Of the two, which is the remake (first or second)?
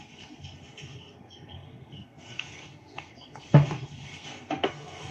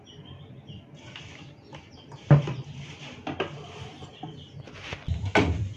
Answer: first